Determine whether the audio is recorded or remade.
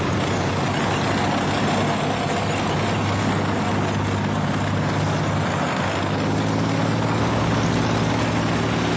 recorded